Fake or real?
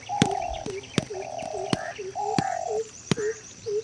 real